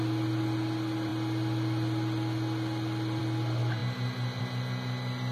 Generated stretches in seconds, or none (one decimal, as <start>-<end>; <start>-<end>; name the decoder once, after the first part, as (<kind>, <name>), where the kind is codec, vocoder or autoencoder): none